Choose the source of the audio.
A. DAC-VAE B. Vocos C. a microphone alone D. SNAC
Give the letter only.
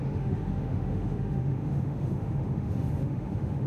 A